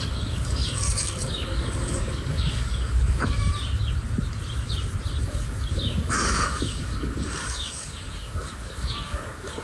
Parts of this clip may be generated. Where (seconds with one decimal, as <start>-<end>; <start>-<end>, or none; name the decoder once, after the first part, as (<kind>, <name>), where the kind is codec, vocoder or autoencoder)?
0.0-3.5 (codec, DAC); 5.2-9.6